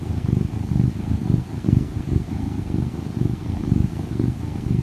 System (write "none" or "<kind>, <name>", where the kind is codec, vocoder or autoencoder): codec, SNAC